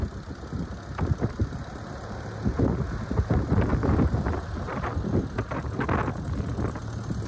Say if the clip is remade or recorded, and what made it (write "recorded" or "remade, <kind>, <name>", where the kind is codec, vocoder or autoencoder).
recorded